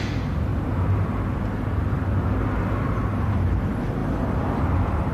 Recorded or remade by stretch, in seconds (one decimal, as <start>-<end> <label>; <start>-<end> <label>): 0.0-4.0 recorded; 4.0-4.6 remade; 4.6-5.1 recorded